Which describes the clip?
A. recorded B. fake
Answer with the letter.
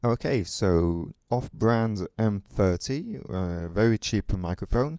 B